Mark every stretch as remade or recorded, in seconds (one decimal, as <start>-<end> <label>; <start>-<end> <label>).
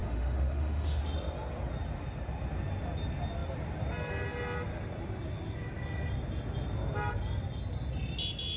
0.0-1.0 remade; 1.0-8.6 recorded